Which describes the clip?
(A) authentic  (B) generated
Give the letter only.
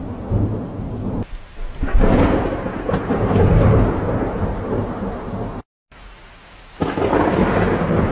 A